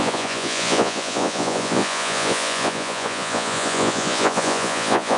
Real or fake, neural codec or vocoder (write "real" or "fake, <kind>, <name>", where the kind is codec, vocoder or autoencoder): fake, vocoder, Vocos